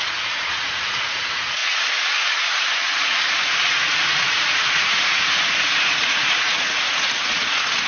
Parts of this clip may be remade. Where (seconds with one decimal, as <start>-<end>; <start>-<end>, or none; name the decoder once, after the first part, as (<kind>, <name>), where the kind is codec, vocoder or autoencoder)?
0.0-7.9 (vocoder, Vocos)